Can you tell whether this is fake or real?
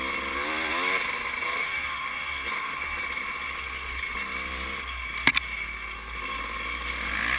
real